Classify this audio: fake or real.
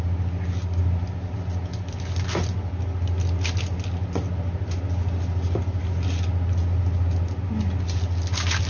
real